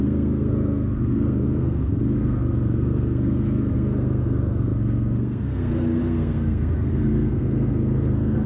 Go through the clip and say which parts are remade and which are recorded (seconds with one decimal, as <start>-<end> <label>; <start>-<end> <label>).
0.0-8.5 remade